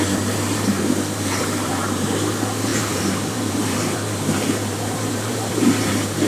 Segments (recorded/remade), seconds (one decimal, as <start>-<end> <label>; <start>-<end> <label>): 0.0-6.3 remade